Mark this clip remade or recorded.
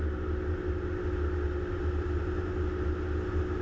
recorded